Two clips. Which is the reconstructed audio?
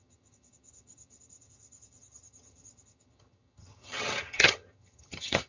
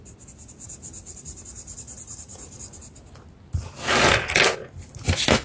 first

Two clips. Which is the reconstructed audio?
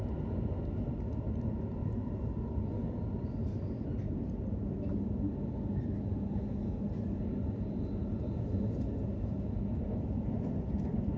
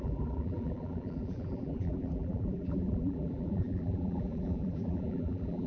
second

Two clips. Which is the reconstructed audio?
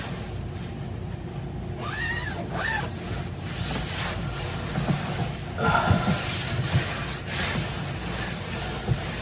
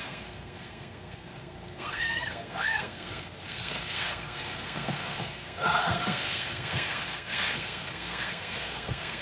second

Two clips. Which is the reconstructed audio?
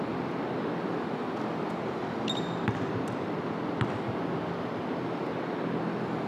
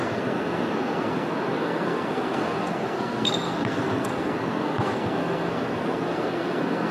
second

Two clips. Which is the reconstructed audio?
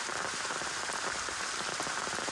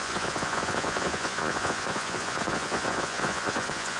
second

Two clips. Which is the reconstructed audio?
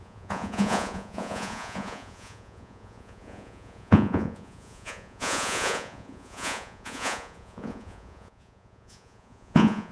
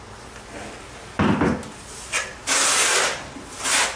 first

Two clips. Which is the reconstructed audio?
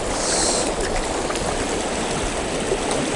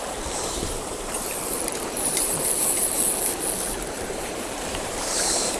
second